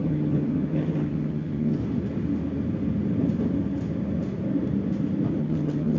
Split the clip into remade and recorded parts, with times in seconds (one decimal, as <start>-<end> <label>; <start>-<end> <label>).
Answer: 0.0-1.8 remade; 1.8-5.4 recorded; 5.4-6.0 remade